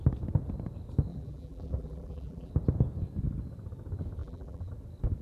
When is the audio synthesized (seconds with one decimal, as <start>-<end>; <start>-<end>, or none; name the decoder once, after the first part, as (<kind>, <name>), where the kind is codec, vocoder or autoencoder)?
1.1-2.5 (vocoder, BigVGAN v2); 4.2-4.7